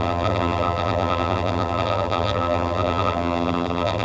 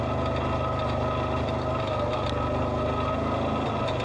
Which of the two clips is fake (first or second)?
first